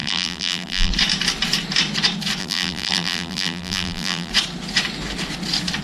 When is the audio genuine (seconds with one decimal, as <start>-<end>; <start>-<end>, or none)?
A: 0.9-2.4; 4.3-5.8